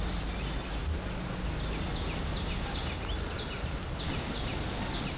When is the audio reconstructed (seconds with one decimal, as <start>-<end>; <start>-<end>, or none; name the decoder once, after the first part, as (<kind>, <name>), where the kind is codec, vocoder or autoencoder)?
none